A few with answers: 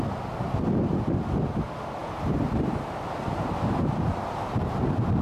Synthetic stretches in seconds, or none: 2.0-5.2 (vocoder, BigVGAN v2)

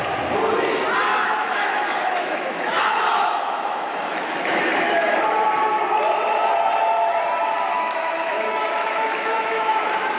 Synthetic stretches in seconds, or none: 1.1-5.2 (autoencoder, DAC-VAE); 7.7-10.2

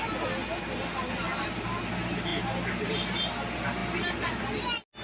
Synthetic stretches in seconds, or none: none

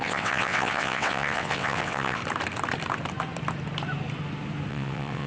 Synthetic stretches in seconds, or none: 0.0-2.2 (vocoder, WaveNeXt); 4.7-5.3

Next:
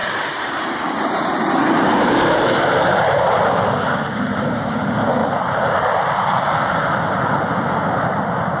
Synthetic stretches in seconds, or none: 0.0-4.5 (vocoder, BigVGAN v2); 5.2-6.5